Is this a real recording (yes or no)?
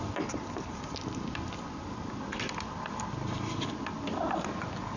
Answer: yes